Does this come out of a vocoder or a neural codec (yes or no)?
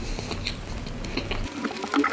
no